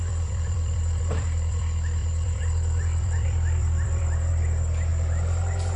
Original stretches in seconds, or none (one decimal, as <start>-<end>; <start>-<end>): none